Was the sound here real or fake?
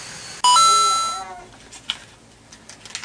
real